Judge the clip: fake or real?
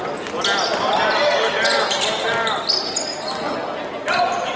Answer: real